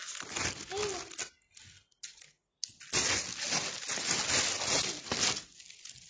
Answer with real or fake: real